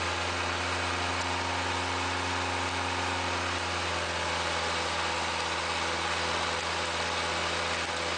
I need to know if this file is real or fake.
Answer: real